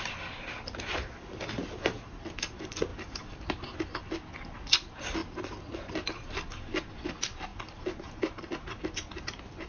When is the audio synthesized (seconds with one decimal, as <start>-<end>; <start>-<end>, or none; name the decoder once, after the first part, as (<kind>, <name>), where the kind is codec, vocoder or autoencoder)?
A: none